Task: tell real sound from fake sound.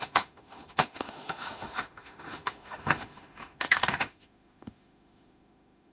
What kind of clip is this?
fake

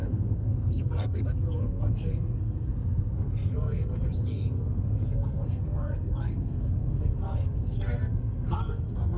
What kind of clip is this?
fake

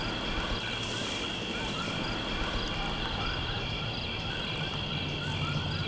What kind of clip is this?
real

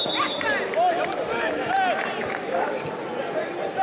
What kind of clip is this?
real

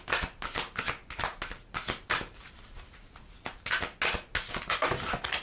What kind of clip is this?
real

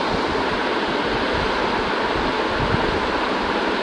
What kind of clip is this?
real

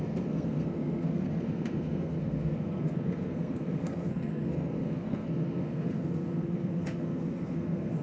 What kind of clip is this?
fake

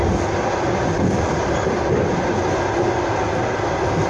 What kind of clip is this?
real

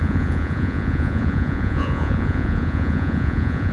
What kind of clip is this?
fake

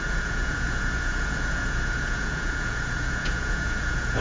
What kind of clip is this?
fake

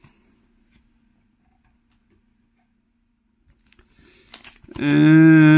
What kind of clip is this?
real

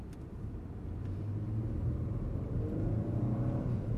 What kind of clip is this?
real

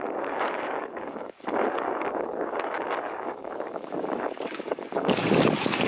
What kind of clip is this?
fake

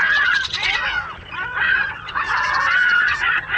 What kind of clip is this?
fake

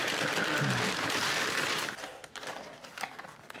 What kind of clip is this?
real